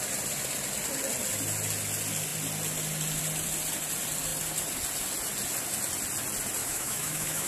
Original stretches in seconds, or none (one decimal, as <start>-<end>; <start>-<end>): 0.0-6.6